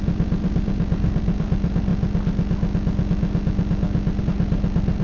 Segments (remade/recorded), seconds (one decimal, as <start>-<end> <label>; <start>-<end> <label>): 0.0-1.9 remade; 1.9-4.2 recorded; 4.2-5.0 remade

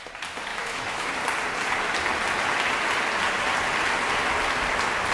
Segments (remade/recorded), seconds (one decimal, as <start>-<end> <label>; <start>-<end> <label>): 0.0-0.5 recorded; 0.5-1.1 remade; 1.1-5.1 recorded

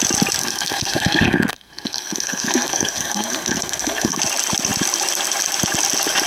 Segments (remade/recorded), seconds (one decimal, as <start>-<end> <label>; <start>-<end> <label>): 0.0-0.4 recorded; 0.4-4.2 remade; 4.2-6.3 recorded

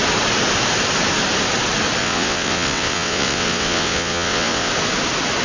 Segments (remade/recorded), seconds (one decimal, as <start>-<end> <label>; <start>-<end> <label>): 0.0-2.0 recorded; 2.0-4.7 remade; 4.7-5.4 recorded

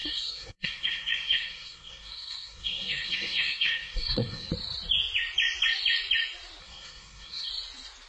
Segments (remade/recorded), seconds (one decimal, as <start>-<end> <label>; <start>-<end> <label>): 0.0-4.5 remade; 4.5-6.6 recorded; 6.6-7.5 remade; 7.5-8.1 recorded

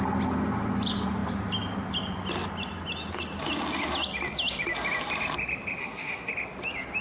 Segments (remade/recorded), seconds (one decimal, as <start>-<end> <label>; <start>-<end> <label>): 0.0-5.8 recorded; 5.8-6.3 remade; 6.3-7.0 recorded

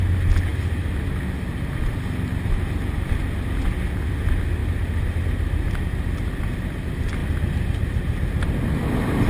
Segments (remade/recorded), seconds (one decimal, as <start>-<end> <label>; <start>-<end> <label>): 0.0-0.5 recorded; 0.5-1.1 remade; 1.1-4.6 recorded; 4.6-5.2 remade; 5.2-9.3 recorded